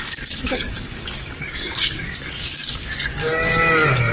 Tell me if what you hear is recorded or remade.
remade